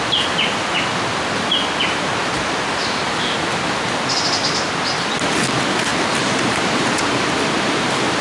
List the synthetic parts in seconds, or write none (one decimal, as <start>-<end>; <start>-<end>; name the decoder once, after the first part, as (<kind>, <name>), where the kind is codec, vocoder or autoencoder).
5.9-7.2 (vocoder, BigVGAN v2)